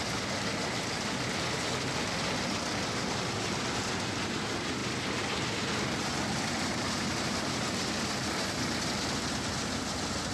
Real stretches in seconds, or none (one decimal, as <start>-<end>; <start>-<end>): 0.0-10.3